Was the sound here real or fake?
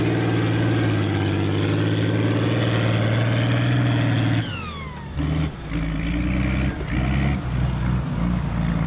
real